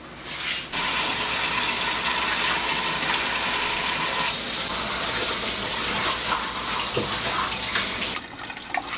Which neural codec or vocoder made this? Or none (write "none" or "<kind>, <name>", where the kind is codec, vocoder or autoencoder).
none